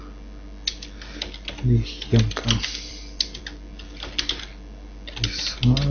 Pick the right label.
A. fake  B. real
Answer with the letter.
B